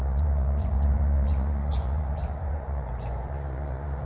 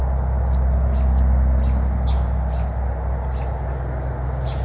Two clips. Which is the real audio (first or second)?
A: second